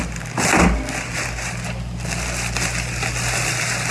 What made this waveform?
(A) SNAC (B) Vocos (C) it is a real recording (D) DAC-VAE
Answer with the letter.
C